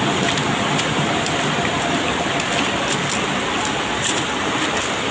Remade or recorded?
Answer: recorded